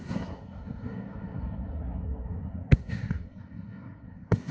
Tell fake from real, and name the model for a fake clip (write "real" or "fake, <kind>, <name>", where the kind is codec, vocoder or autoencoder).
fake, codec, SNAC